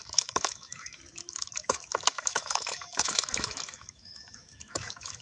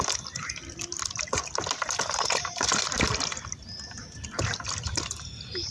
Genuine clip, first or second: second